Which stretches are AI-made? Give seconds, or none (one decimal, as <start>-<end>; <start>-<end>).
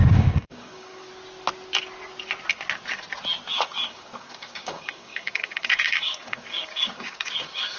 0.0-1.1; 3.5-7.8